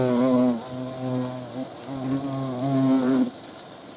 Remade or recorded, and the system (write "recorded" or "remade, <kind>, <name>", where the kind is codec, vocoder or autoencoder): recorded